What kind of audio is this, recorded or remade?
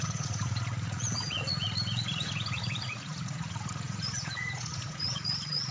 remade